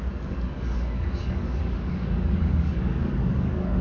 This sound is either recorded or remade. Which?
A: remade